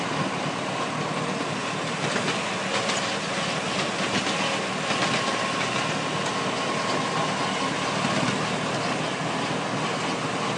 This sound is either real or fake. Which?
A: real